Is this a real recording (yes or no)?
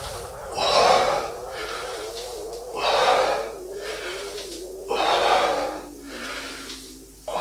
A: yes